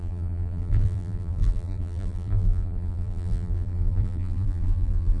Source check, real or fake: fake